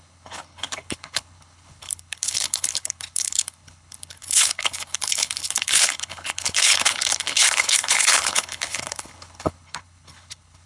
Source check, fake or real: fake